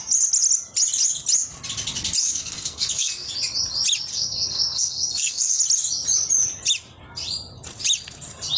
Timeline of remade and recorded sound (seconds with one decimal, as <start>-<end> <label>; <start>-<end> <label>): 0.0-2.2 recorded; 2.2-3.3 remade; 3.3-4.1 recorded; 4.1-5.6 remade; 5.6-8.6 recorded